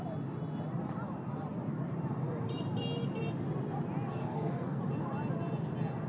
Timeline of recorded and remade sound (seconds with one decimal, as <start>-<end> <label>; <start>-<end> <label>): 0.0-4.1 recorded; 4.1-4.8 remade; 4.8-6.1 recorded

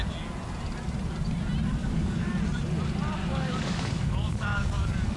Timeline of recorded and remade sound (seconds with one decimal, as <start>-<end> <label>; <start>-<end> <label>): 0.0-1.8 recorded; 1.8-2.4 remade; 2.4-3.2 recorded; 3.2-5.2 remade

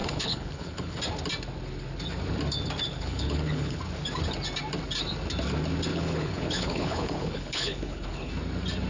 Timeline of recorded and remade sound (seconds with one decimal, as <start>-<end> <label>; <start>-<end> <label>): 0.0-1.0 remade; 1.0-2.9 recorded; 2.9-3.8 remade; 3.8-5.9 recorded; 5.9-8.3 remade; 8.3-8.9 recorded

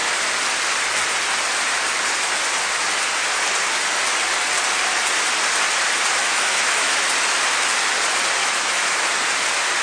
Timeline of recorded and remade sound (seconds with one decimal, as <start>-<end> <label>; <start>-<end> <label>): 0.0-6.2 recorded; 6.2-6.9 remade; 6.9-8.4 recorded; 8.4-9.1 remade; 9.1-9.8 recorded

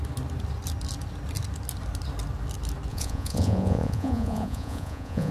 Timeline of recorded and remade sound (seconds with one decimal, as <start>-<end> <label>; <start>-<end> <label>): 0.0-2.9 recorded; 2.9-5.3 remade

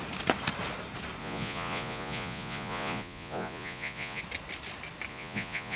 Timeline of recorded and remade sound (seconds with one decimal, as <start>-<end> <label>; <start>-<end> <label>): 0.0-1.2 recorded; 1.2-4.2 remade; 4.2-5.1 recorded; 5.1-5.8 remade

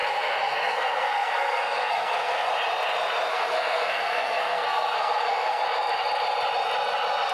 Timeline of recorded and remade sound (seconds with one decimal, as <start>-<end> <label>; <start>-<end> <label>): 0.0-2.5 remade; 2.5-3.3 recorded; 3.3-5.6 remade; 5.6-7.3 recorded